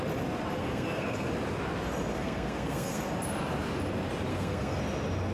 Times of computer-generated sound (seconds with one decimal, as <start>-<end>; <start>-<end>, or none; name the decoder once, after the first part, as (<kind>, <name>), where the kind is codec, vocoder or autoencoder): 0.6-1.3 (codec, SNAC); 2.1-3.0; 4.3-4.8